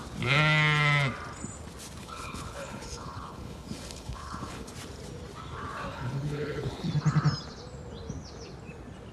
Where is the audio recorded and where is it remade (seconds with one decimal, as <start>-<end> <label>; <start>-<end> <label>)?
0.0-2.0 recorded; 2.0-4.7 remade; 4.7-5.9 recorded; 5.9-6.9 remade; 6.9-9.1 recorded